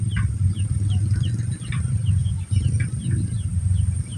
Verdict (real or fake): real